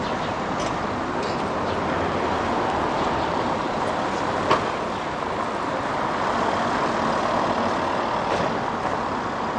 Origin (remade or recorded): recorded